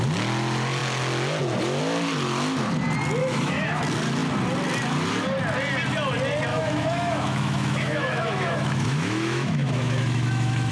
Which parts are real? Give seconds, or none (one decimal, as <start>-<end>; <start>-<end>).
0.0-3.2; 3.8-6.5